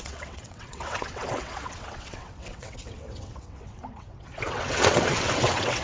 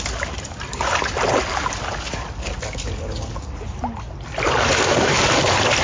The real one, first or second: second